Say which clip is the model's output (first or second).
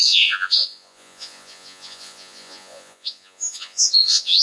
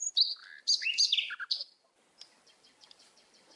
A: first